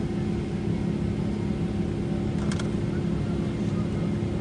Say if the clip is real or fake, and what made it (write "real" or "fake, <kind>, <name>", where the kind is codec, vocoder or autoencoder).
real